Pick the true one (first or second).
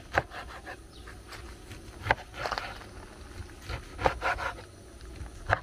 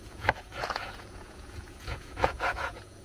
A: first